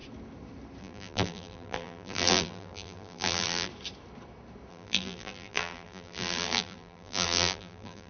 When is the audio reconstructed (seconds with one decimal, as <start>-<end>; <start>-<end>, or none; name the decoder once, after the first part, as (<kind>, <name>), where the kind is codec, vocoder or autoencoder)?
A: 0.8-3.7 (vocoder, BigVGAN v2); 4.7-8.1